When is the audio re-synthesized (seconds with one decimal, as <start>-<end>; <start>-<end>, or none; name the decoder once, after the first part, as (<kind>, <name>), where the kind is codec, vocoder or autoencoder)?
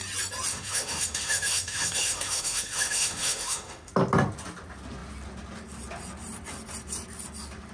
0.5-3.9 (autoencoder, DAC-VAE)